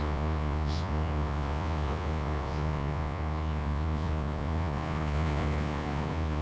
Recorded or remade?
remade